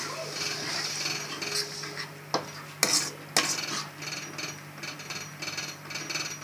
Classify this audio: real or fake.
real